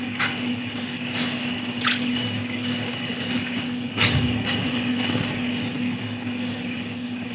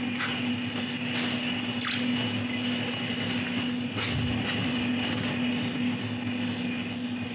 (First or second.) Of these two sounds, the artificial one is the first